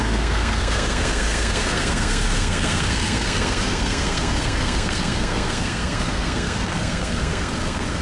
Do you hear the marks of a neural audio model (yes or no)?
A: yes